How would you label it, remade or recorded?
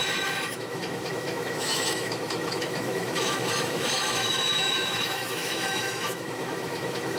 remade